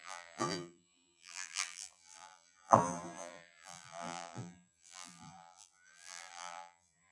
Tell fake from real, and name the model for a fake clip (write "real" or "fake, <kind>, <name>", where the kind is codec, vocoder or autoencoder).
fake, vocoder, BigVGAN v2